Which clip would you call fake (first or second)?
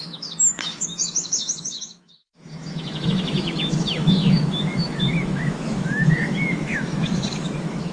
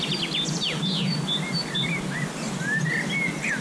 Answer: first